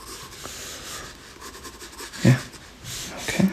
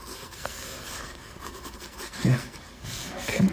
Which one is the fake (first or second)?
second